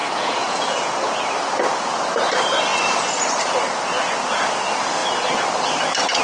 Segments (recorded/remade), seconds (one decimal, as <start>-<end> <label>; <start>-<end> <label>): 0.0-1.1 remade; 1.1-6.2 recorded

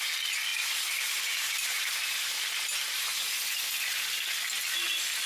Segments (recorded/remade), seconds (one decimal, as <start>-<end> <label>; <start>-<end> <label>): 0.0-0.5 recorded; 0.5-3.7 remade; 3.7-5.3 recorded